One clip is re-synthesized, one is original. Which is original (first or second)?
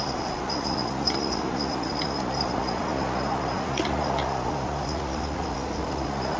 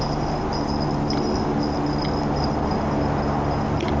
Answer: second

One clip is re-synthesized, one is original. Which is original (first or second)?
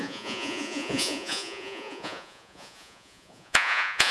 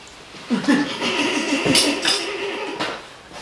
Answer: second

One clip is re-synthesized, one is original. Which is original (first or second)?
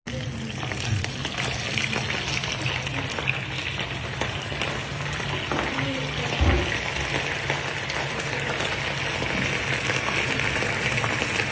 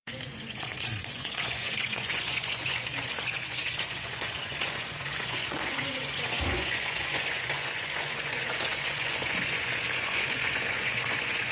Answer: first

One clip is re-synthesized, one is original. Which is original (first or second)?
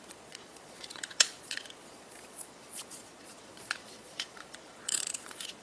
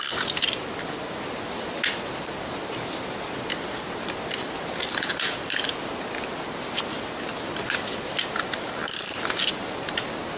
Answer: second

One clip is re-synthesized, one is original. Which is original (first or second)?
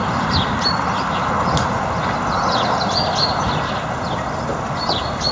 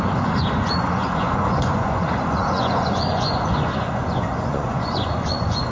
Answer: first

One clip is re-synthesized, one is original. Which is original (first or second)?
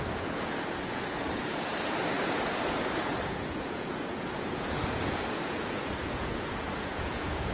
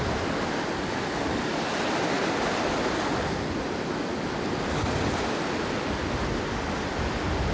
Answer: second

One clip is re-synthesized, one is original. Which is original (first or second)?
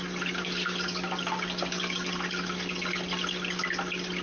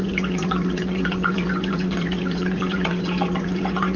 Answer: first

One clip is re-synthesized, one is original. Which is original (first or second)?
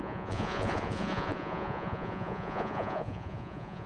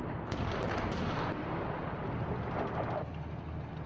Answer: second